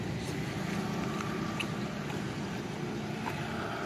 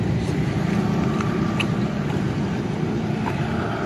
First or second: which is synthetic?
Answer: second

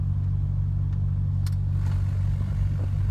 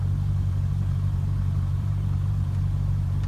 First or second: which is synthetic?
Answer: second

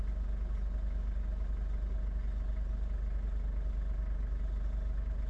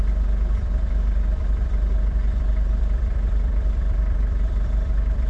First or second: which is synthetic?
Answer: second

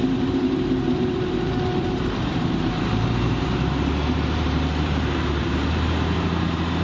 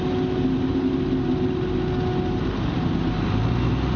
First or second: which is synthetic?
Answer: first